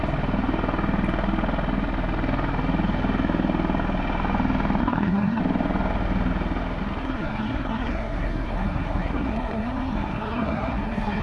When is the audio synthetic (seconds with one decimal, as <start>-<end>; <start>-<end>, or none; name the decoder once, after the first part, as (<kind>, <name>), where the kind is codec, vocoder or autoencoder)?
4.8-5.4 (codec, SNAC); 7.0-11.2

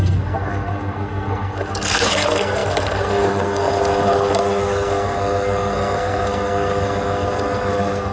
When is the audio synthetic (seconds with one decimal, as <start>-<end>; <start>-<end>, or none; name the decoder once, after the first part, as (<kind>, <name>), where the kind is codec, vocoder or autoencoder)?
0.0-8.1 (codec, SNAC)

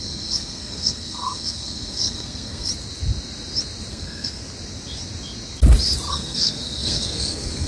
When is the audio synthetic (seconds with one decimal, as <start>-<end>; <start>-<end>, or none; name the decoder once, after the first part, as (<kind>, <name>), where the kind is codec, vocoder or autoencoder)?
0.0-2.7 (codec, SNAC); 3.9-4.4; 6.1-7.7